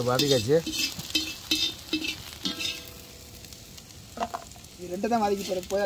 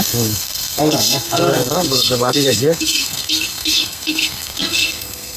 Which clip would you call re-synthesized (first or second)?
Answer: second